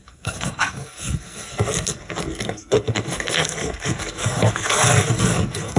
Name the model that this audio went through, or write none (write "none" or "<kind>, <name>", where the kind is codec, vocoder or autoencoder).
codec, SNAC